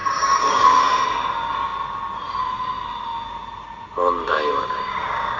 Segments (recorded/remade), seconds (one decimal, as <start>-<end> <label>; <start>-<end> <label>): 0.0-1.0 remade; 1.0-4.2 recorded; 4.2-5.4 remade